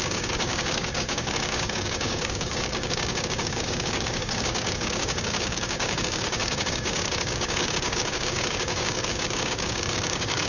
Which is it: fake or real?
fake